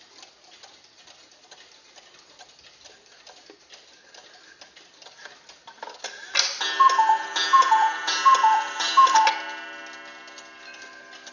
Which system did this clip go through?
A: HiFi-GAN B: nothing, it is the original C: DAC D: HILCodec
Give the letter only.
B